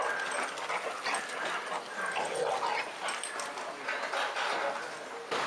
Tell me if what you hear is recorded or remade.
recorded